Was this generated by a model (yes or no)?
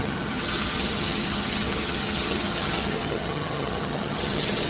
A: yes